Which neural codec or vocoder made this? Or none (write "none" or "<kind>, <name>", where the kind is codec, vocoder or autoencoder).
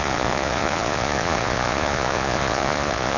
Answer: vocoder, Vocos